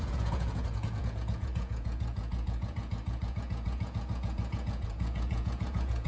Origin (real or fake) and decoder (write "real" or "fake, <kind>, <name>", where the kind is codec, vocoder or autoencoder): fake, vocoder, Vocos